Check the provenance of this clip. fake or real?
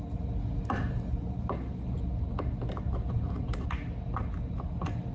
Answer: real